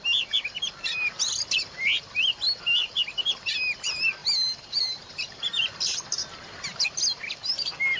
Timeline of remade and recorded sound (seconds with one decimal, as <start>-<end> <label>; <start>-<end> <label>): 0.0-4.2 recorded; 4.2-7.0 remade; 7.0-8.0 recorded